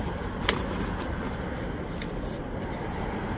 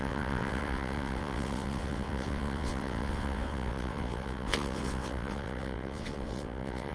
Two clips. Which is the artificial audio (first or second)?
second